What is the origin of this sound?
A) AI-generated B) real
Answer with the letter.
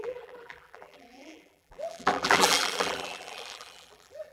A